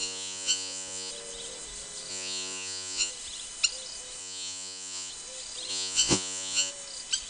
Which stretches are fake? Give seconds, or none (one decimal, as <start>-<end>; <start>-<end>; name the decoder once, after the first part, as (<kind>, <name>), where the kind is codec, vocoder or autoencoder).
0.0-1.1 (vocoder, Vocos); 2.1-3.1; 4.2-5.1; 5.7-6.7